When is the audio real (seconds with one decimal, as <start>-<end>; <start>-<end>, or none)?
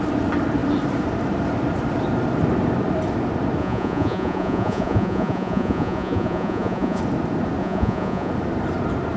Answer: 0.0-3.6; 7.0-7.6; 8.3-9.2